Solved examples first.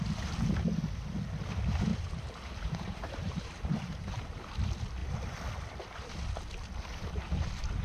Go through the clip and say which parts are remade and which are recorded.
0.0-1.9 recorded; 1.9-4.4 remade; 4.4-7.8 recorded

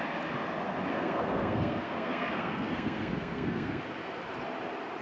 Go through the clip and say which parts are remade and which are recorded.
0.0-0.9 recorded; 0.9-3.8 remade; 3.8-5.0 recorded

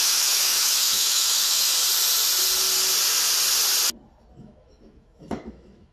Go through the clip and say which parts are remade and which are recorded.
0.0-1.7 remade; 1.7-4.4 recorded; 4.4-5.9 remade

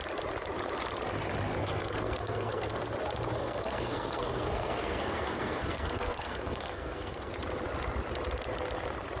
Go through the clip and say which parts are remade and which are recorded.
0.0-1.6 recorded; 1.6-2.8 remade; 2.8-3.4 recorded; 3.4-7.3 remade; 7.3-9.2 recorded

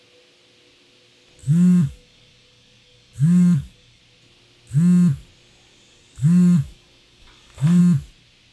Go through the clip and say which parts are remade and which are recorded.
0.0-1.4 recorded; 1.4-4.0 remade; 4.0-5.7 recorded; 5.7-7.8 remade; 7.8-8.5 recorded